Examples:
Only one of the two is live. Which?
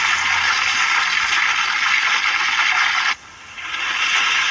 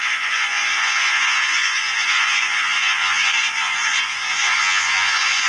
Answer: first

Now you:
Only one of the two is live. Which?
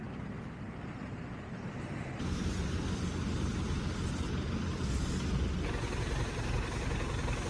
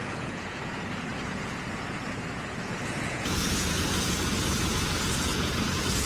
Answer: first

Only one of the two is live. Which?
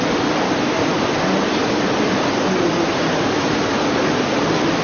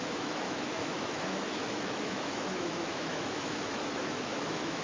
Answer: first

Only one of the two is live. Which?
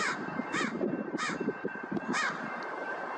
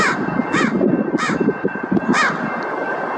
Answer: second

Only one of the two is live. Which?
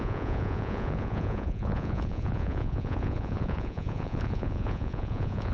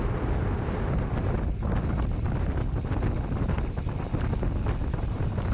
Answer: second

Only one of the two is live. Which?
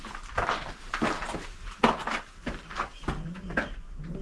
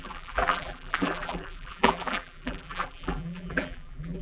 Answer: first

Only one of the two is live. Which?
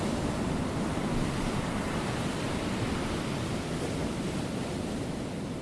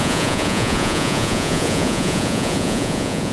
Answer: first